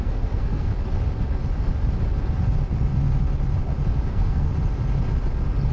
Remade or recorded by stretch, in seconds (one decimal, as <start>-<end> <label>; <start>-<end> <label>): 0.0-0.7 remade; 0.7-4.1 recorded; 4.1-4.5 remade; 4.5-5.7 recorded